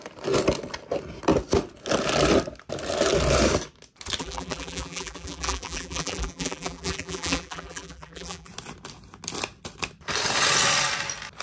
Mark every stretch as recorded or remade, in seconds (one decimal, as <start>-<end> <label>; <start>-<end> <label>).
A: 0.0-4.2 recorded; 4.2-8.5 remade; 8.5-11.4 recorded